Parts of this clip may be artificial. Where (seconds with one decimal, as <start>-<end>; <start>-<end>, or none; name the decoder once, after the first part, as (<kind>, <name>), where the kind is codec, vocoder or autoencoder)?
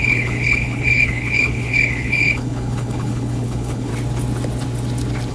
0.0-3.9 (codec, HILCodec)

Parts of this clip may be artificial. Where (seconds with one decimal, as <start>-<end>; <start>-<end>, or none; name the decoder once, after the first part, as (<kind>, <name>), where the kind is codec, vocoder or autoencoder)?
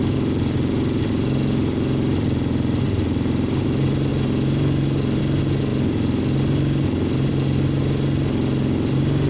none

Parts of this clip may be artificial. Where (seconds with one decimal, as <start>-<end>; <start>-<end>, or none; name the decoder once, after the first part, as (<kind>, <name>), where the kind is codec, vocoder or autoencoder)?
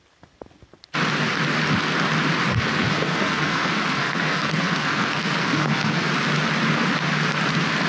2.5-6.1 (codec, SNAC)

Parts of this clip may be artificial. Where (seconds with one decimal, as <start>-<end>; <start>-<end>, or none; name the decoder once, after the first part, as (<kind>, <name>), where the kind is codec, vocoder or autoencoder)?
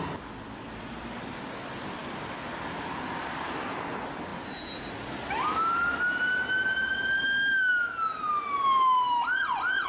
none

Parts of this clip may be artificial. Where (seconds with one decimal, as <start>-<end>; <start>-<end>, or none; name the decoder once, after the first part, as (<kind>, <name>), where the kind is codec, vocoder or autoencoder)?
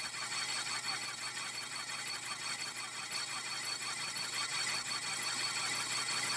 none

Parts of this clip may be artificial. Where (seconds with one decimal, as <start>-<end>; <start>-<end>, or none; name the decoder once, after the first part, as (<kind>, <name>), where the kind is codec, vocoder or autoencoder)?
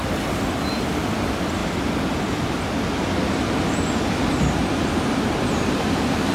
none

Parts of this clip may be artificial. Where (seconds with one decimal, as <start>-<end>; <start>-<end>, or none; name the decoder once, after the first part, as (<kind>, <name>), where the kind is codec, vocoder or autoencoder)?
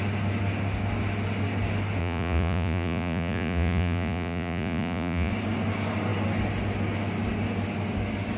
2.0-5.3 (vocoder, Vocos)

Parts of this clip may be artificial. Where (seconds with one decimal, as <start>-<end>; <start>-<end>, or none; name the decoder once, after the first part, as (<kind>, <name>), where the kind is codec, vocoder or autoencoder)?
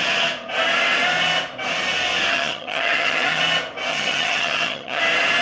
2.3-3.4 (vocoder, HiFi-GAN); 3.9-5.0